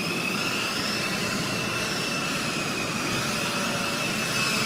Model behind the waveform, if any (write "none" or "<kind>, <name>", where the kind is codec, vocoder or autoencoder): none